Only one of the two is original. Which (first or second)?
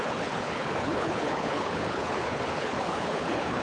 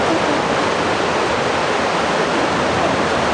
second